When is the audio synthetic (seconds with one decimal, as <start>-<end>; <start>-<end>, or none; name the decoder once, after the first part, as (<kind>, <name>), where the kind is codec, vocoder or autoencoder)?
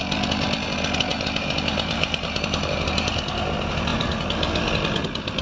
1.1-3.1 (vocoder, BigVGAN v2)